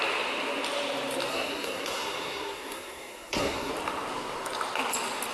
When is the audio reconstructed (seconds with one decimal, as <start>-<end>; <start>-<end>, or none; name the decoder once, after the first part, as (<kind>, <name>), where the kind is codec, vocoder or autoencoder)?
1.3-3.7 (codec, SNAC)